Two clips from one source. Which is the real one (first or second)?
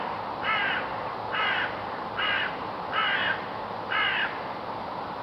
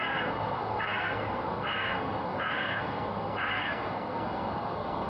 first